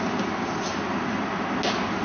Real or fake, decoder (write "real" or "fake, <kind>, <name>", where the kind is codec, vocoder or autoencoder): real